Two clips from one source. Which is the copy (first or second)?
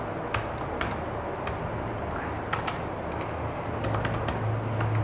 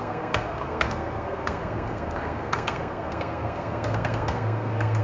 second